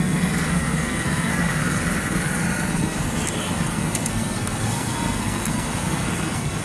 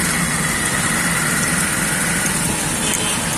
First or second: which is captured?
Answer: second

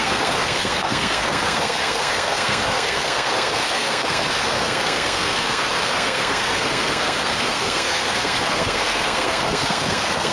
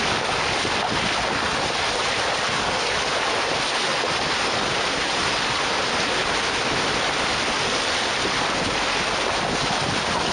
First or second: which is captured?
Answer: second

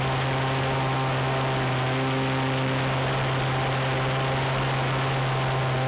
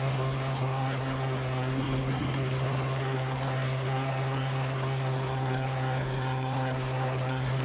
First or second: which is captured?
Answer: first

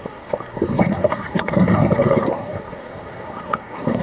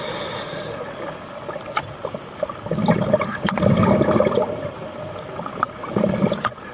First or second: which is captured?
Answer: second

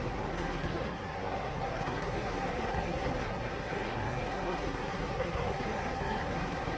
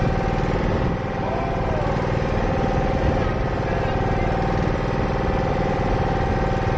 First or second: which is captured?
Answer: second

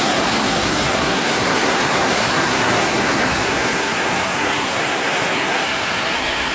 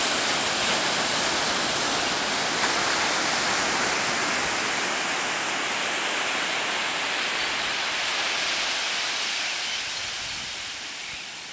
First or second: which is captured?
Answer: second